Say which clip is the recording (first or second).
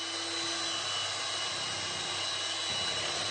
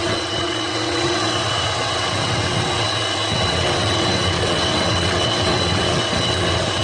first